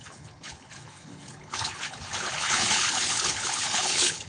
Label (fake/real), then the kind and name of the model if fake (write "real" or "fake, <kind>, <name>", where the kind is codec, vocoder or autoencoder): fake, codec, HILCodec